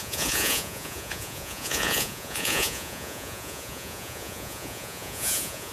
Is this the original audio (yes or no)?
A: no